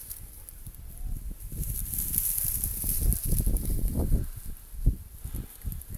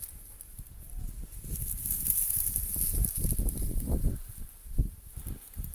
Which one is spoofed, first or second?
first